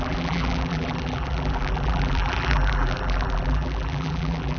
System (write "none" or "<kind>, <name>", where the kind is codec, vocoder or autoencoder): vocoder, BigVGAN v2